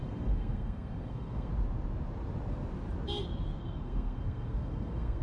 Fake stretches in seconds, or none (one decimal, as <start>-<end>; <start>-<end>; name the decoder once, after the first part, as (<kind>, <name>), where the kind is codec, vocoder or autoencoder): 0.0-1.5 (codec, SNAC); 3.6-5.2